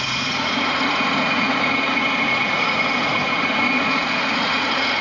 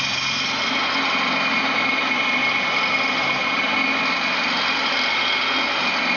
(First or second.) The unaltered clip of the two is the second